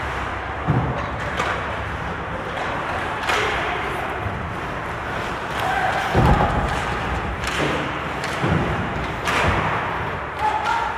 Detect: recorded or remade remade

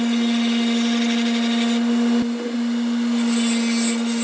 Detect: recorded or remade recorded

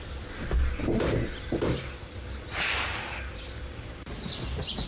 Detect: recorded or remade recorded